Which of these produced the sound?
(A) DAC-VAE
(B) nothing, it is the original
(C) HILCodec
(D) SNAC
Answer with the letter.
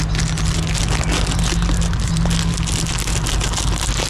B